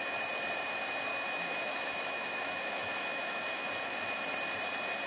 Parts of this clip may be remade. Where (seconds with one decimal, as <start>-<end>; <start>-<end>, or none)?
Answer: 1.1-4.2